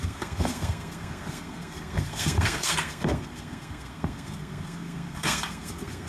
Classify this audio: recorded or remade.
remade